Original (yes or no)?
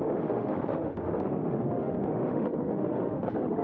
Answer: no